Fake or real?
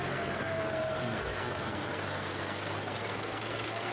fake